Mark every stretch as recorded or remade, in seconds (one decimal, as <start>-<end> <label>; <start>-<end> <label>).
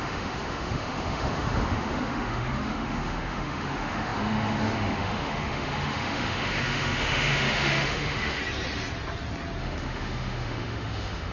0.0-8.4 remade; 8.4-9.6 recorded; 9.6-11.3 remade